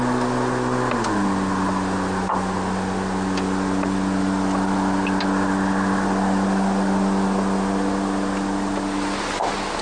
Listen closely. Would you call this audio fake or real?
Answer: real